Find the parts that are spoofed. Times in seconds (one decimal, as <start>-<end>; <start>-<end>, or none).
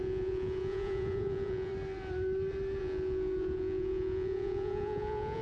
0.0-1.7; 2.8-5.4